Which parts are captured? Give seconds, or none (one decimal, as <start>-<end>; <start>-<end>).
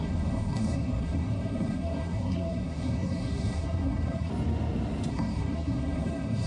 4.3-5.1